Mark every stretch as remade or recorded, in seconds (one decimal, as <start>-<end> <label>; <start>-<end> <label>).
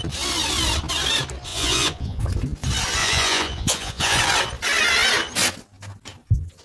0.0-1.5 recorded; 1.5-2.2 remade; 2.2-3.0 recorded; 3.0-4.2 remade; 4.2-6.6 recorded